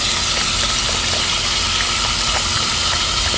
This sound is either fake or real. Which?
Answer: real